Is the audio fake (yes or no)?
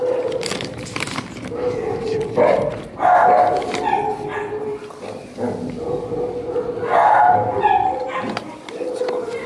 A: no